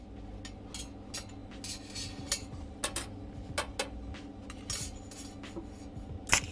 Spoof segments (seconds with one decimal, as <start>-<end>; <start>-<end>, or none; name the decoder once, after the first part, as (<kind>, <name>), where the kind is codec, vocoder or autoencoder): none